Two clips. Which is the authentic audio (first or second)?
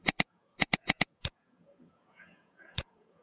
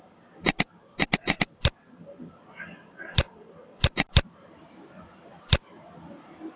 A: second